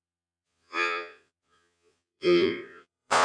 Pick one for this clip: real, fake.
fake